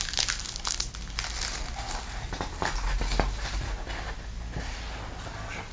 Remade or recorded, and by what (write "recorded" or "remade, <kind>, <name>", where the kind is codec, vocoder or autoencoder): recorded